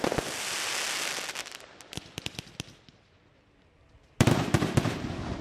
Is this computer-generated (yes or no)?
no